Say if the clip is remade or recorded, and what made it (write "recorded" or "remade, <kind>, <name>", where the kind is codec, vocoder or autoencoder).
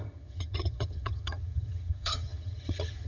remade, vocoder, HiFi-GAN